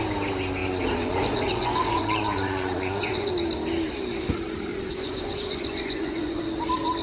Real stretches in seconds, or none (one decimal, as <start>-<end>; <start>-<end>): 0.0-0.6; 3.3-4.7; 6.4-7.0